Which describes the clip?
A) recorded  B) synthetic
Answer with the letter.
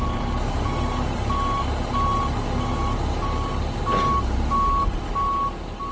A